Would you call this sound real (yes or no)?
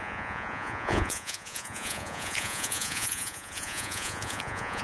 no